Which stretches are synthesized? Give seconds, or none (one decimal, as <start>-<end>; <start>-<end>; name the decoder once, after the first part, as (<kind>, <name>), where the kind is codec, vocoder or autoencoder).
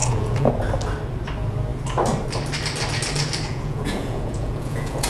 0.0-0.5 (vocoder, Vocos); 3.5-5.1